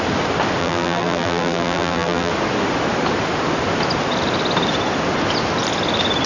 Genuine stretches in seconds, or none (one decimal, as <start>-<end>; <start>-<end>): 0.0-0.6; 2.3-6.3